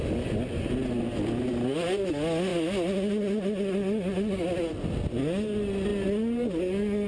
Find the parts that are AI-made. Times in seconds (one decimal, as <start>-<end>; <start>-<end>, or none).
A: none